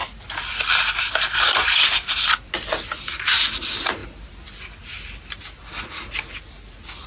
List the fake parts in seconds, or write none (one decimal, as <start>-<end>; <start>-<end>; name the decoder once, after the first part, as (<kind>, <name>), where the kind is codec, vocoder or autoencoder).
none